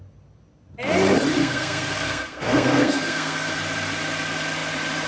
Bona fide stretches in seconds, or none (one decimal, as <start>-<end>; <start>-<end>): 0.0-1.4; 3.5-5.1